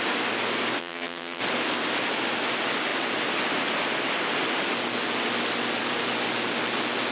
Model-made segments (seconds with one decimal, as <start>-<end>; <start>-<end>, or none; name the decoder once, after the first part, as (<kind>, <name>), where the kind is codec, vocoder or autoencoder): 0.8-1.4 (vocoder, HiFi-GAN)